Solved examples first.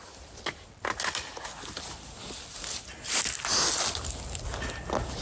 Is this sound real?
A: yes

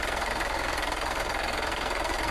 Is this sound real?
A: no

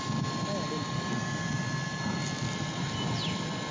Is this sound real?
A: yes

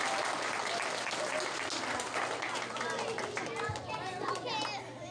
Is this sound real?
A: yes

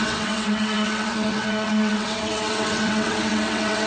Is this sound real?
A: no